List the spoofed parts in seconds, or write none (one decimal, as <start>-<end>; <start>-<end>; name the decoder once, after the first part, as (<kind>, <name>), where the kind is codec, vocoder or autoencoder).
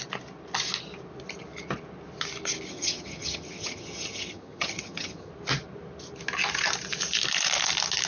2.7-5.3 (vocoder, HiFi-GAN)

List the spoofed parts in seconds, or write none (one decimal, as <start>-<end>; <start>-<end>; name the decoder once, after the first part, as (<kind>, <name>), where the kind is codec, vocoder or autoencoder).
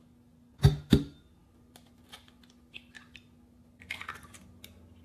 none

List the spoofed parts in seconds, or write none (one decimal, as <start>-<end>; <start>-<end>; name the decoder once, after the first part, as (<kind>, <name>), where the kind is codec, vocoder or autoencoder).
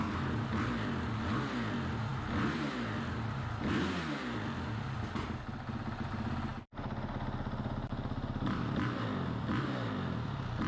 none